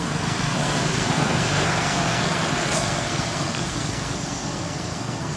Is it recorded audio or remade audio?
remade